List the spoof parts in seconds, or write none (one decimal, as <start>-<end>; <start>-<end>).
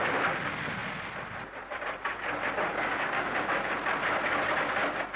2.7-3.7